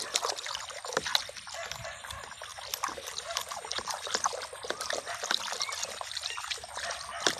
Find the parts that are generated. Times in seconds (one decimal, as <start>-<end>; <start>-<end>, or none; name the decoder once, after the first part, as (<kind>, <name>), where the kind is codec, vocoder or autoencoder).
none

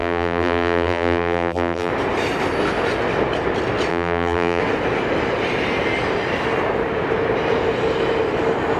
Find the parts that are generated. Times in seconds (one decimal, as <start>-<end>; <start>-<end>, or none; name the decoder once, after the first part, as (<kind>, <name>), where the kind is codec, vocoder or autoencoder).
0.0-1.9 (vocoder, BigVGAN v2); 3.9-4.6

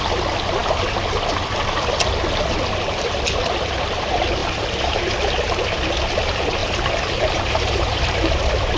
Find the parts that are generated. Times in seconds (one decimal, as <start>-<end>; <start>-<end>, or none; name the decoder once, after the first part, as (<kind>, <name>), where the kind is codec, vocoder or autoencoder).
4.4-5.0 (vocoder, BigVGAN v2); 6.6-8.4

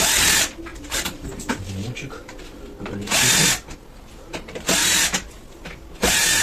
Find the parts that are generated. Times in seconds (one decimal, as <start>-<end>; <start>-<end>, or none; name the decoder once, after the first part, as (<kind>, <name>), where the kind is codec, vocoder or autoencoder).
0.7-1.6 (vocoder, BigVGAN v2); 4.1-4.7

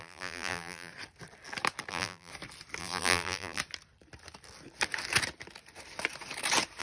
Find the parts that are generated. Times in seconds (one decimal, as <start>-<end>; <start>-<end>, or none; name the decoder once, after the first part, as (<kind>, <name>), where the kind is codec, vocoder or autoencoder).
0.0-0.9 (vocoder, BigVGAN v2); 1.9-2.3; 2.8-3.6

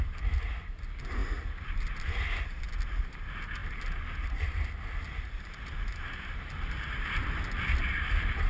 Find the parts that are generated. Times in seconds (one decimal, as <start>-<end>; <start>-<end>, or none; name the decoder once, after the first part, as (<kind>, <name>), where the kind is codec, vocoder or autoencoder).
5.9-7.0 (vocoder, BigVGAN v2)

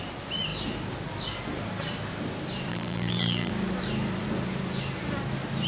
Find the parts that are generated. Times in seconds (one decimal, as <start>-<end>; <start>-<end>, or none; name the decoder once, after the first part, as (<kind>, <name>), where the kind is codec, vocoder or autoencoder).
2.7-3.5 (vocoder, BigVGAN v2)